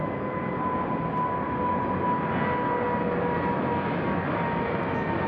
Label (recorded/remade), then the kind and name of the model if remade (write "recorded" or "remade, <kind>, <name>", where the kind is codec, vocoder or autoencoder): recorded